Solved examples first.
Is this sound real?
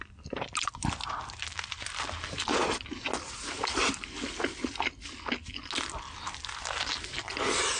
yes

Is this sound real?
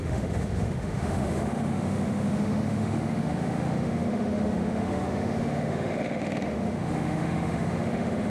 no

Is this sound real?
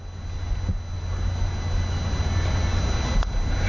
yes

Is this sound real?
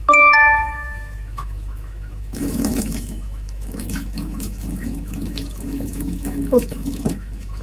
no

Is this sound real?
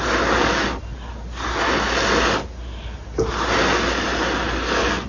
yes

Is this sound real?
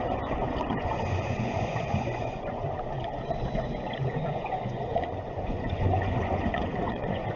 no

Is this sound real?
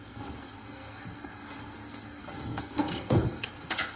no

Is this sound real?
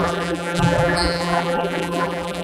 no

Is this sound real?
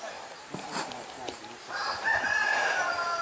no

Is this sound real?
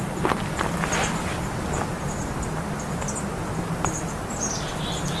yes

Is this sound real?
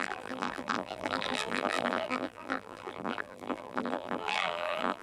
no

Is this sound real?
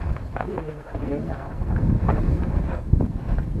no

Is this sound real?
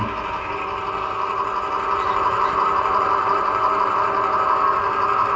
yes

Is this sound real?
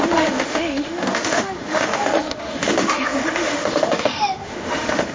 no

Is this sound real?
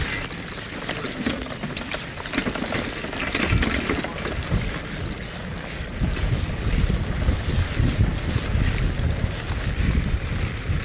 yes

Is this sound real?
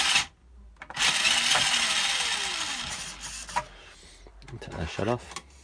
yes